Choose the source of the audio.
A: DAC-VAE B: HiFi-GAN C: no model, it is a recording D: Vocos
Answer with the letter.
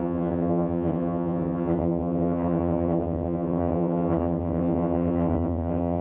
B